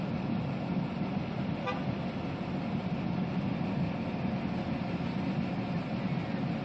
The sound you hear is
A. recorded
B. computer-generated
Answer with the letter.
A